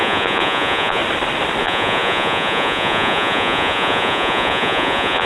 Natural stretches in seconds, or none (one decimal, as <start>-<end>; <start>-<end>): 1.0-1.6

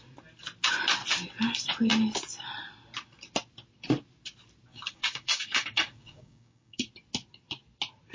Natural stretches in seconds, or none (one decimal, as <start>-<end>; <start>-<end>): 0.0-4.7; 6.9-8.1

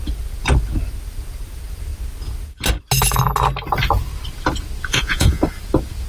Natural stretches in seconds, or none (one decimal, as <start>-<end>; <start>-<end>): 0.0-4.9; 5.4-6.1

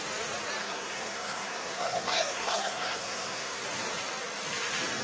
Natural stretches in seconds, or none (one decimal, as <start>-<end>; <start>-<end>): 0.0-0.6; 3.6-5.0

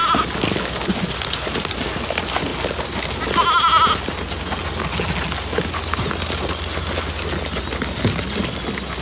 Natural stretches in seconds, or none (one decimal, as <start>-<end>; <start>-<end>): 0.0-9.0

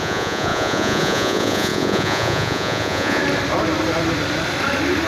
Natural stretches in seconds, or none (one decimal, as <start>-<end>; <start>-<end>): 3.2-5.1

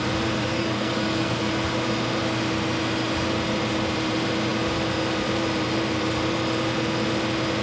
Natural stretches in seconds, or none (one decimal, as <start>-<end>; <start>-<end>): 0.0-0.5; 1.5-7.6

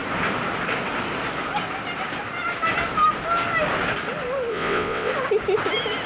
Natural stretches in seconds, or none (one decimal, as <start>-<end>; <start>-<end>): 0.0-4.5; 5.1-6.1